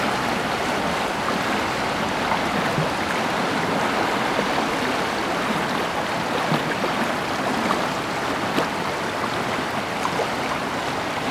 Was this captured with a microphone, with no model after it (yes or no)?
yes